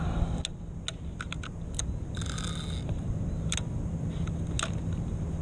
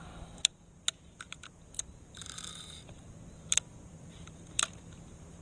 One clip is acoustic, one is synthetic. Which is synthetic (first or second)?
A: second